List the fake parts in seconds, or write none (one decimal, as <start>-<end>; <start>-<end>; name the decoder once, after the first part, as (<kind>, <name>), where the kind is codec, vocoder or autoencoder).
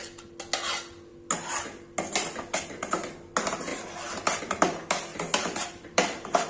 5.1-6.1 (vocoder, BigVGAN v2)